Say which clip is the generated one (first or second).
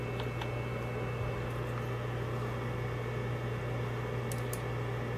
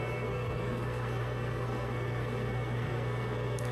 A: second